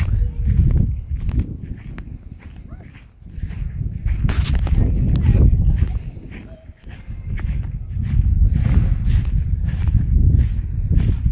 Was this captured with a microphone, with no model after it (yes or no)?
yes